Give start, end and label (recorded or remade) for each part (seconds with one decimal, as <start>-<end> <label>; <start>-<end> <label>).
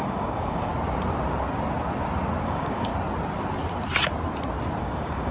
0.0-0.7 remade; 0.7-2.4 recorded; 2.4-2.9 remade; 2.9-4.8 recorded; 4.8-5.3 remade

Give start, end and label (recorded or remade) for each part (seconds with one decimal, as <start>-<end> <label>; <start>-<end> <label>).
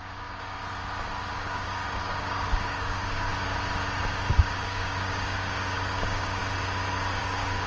0.0-0.6 remade; 0.6-1.3 recorded; 1.3-3.3 remade; 3.3-4.3 recorded; 4.3-6.4 remade; 6.4-7.2 recorded; 7.2-7.7 remade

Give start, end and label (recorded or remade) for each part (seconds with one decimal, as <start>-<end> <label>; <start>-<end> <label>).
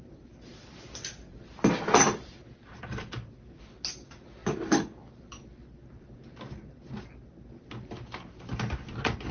0.0-9.3 recorded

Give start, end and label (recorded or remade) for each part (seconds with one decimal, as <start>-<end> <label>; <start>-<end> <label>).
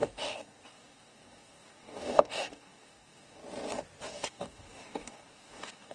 0.0-3.4 remade; 3.4-4.1 recorded; 4.1-5.9 remade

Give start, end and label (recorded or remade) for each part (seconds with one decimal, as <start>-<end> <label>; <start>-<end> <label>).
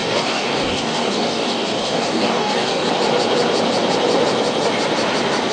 0.0-2.9 remade; 2.9-5.5 recorded